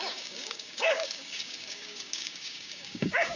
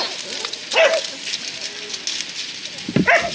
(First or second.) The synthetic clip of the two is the first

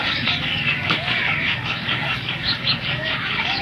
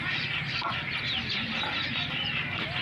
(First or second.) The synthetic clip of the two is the first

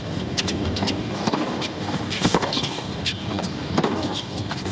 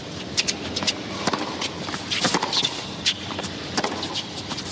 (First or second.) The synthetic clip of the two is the first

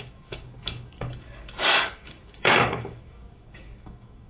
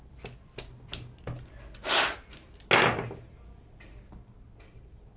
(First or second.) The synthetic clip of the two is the first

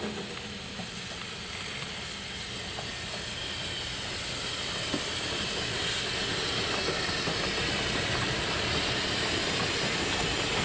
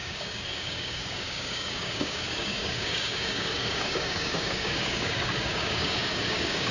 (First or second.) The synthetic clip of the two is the second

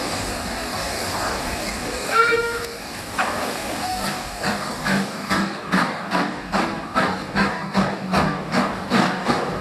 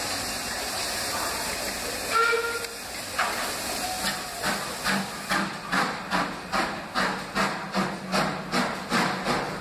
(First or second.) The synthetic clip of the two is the first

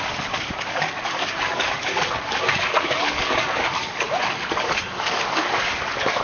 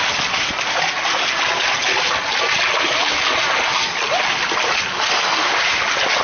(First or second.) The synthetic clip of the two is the first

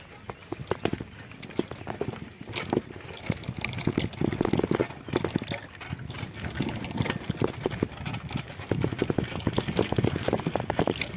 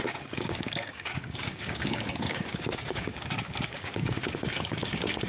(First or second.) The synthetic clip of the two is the second